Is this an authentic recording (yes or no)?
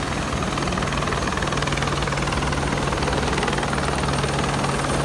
yes